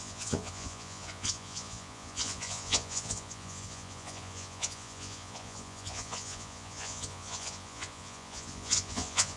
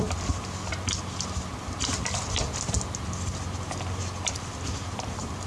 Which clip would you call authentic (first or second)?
second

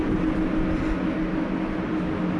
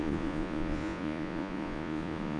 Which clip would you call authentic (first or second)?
first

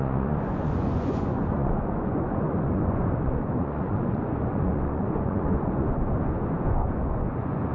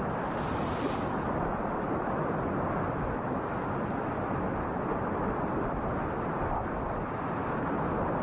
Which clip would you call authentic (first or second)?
second